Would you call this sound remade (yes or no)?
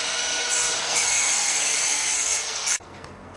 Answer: yes